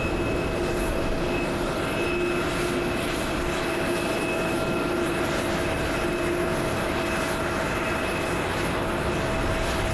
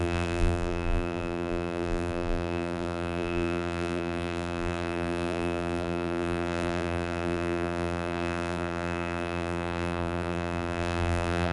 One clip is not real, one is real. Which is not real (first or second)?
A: second